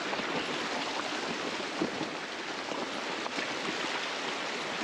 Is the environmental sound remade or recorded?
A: recorded